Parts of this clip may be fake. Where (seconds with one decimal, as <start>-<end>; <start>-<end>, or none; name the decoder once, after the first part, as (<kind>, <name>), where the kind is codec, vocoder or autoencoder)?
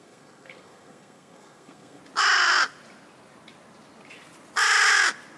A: 0.0-2.0 (codec, SNAC)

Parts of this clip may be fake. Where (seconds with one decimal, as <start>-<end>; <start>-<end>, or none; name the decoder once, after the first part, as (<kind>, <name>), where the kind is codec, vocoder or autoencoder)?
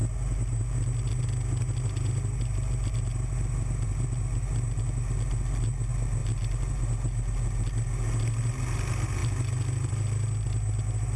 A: none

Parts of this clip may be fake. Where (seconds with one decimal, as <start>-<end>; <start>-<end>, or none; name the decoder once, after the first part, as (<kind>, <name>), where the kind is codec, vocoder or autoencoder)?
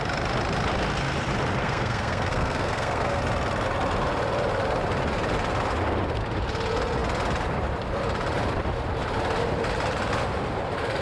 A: 1.6-3.2 (codec, SNAC)